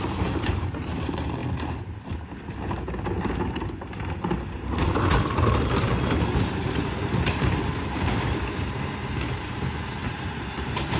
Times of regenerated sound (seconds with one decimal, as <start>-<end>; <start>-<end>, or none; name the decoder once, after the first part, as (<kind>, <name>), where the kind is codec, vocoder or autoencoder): 0.0-1.4 (vocoder, BigVGAN v2); 6.4-11.0